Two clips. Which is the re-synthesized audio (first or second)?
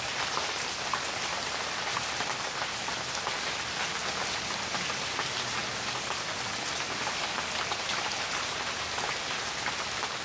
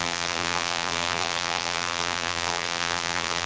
second